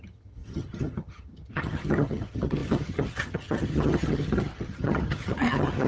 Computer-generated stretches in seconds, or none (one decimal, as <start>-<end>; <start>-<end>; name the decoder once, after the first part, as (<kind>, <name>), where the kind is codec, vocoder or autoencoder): 0.0-5.9 (vocoder, HiFi-GAN)